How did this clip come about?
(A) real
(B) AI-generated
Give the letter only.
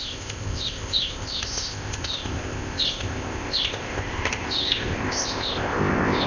B